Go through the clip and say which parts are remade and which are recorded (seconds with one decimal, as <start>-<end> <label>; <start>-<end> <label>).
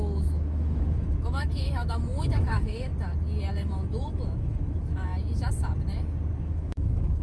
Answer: 0.0-2.9 remade; 2.9-3.5 recorded; 3.5-5.1 remade; 5.1-6.4 recorded; 6.4-7.2 remade